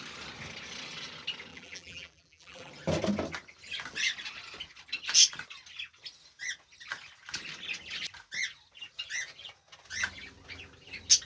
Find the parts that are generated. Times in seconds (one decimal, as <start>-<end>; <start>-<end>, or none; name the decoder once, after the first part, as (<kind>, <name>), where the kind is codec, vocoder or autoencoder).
1.5-2.7 (vocoder, BigVGAN v2)